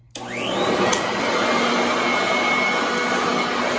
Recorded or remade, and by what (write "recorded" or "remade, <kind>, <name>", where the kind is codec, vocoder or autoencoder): recorded